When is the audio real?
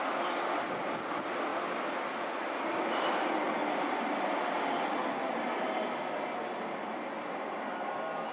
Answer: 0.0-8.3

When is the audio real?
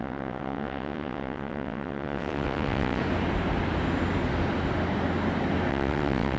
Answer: 3.0-5.7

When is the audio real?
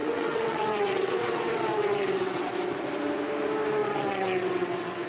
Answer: 2.5-3.8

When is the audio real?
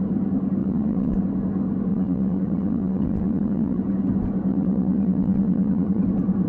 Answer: 0.0-0.6; 1.2-1.9; 3.8-4.5; 6.0-6.5